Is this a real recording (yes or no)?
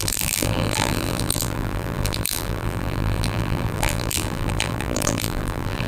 no